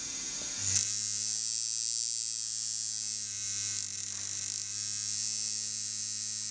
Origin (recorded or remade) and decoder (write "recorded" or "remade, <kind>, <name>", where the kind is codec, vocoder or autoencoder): recorded